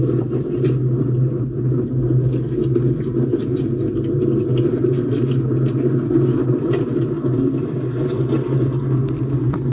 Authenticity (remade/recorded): recorded